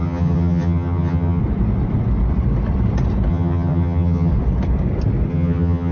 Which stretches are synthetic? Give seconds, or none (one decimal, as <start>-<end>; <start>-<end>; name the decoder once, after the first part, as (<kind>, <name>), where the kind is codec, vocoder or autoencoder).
0.0-1.4 (vocoder, HiFi-GAN); 3.3-4.3; 5.3-5.9